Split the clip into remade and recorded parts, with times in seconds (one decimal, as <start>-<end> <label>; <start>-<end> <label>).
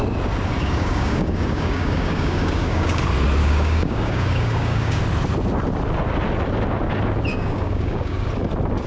0.0-0.6 recorded; 0.6-3.0 remade; 3.0-3.4 recorded; 3.4-5.0 remade; 5.0-7.3 recorded; 7.3-8.3 remade; 8.3-8.9 recorded